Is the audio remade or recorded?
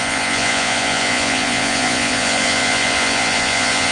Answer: remade